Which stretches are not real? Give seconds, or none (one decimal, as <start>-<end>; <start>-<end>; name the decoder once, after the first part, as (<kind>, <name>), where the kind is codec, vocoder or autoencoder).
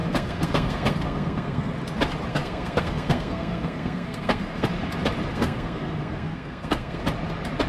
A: 0.0-1.7 (codec, SNAC); 2.3-4.7; 5.3-7.0